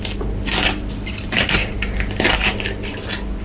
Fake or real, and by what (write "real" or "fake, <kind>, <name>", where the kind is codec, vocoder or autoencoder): real